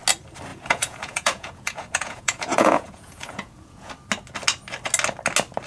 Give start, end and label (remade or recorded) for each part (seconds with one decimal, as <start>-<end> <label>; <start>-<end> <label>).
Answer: 0.0-0.5 recorded; 0.5-3.9 remade; 3.9-5.7 recorded